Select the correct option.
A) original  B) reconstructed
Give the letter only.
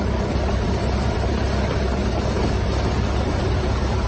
A